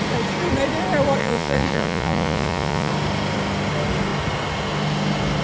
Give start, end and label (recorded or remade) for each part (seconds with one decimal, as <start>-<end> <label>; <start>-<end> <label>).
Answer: 0.0-1.2 recorded; 1.2-2.9 remade; 2.9-5.4 recorded